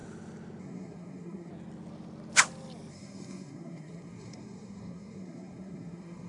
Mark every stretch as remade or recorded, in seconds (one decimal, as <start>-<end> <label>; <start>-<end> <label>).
0.0-0.6 recorded; 0.6-1.5 remade; 1.5-2.9 recorded; 2.9-6.3 remade